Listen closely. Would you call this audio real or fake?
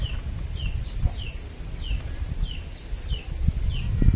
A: real